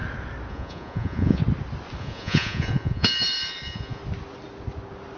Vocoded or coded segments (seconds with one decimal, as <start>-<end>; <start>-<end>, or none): 0.5-1.4; 2.0-4.0